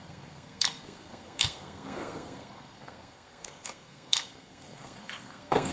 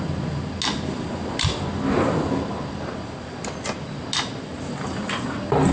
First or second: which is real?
second